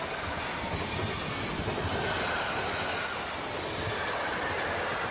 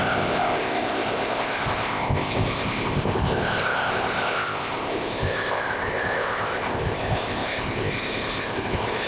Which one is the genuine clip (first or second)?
first